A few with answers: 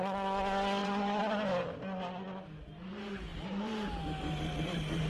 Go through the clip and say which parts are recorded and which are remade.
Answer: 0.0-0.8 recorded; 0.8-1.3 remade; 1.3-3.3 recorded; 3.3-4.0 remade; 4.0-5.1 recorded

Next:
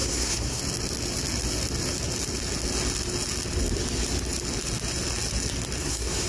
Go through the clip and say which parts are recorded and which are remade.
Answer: 0.0-0.6 remade; 0.6-5.8 recorded; 5.8-6.3 remade

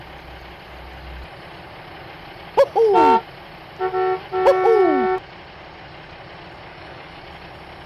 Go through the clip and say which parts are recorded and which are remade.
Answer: 0.0-6.7 recorded; 6.7-7.2 remade; 7.2-7.9 recorded

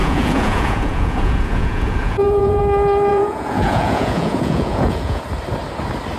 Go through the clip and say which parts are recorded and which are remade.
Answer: 0.0-2.6 remade; 2.6-3.1 recorded; 3.1-5.2 remade; 5.2-6.2 recorded

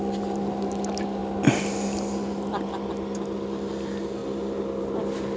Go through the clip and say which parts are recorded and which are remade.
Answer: 0.0-5.4 recorded

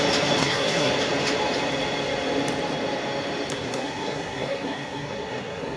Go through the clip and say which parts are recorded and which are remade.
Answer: 0.0-0.4 recorded; 0.4-0.9 remade; 0.9-3.5 recorded; 3.5-5.8 remade

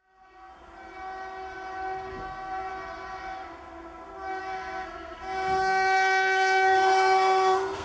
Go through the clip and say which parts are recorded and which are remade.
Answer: 0.0-0.5 remade; 0.5-2.1 recorded; 2.1-2.7 remade; 2.7-4.4 recorded; 4.4-7.8 remade

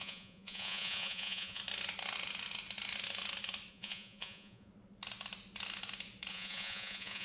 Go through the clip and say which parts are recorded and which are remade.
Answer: 0.0-1.6 remade; 1.6-3.7 recorded; 3.7-4.7 remade; 4.7-6.3 recorded; 6.3-7.2 remade